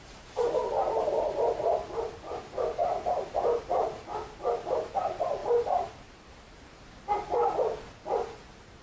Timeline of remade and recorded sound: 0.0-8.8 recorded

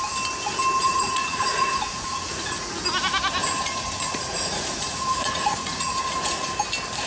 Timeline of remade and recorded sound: 0.0-0.8 recorded; 0.8-2.7 remade; 2.7-3.4 recorded; 3.4-6.5 remade; 6.5-7.1 recorded

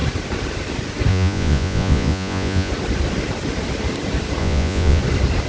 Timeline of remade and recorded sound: 0.0-1.1 recorded; 1.1-2.7 remade; 2.7-4.4 recorded; 4.4-5.0 remade; 5.0-5.5 recorded